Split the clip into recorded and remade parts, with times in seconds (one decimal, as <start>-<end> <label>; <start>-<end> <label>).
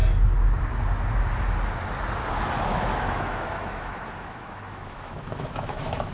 0.0-2.7 recorded; 2.7-6.1 remade